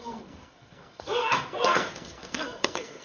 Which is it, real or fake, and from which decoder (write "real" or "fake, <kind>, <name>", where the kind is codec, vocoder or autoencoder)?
fake, codec, SNAC